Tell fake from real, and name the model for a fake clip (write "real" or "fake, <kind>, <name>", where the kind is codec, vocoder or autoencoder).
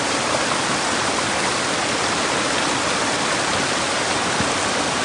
real